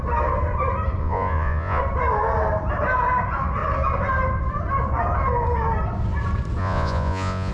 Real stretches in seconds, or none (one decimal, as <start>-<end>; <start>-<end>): 0.0-1.0; 1.8-6.6

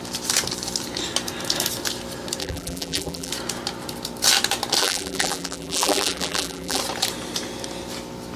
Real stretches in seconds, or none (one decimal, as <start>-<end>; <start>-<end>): 0.0-2.4; 3.3-4.8; 6.8-8.4

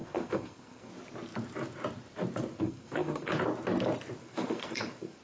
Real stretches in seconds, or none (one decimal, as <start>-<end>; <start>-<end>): 0.9-2.5; 3.3-4.2

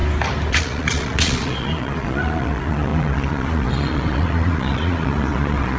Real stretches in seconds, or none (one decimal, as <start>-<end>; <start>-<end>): 0.0-0.5